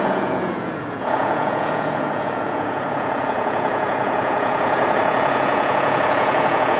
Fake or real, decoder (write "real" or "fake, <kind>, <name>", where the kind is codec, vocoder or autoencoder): fake, vocoder, Vocos